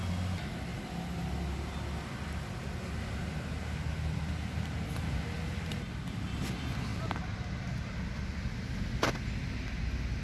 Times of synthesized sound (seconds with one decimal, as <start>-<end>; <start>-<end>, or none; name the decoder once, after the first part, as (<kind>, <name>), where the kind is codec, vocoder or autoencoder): none